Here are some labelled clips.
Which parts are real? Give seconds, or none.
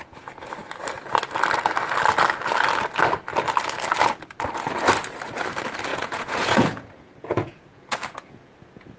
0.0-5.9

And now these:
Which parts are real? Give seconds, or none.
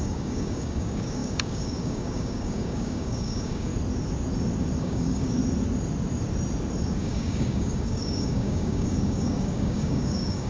3.7-4.8; 5.4-7.0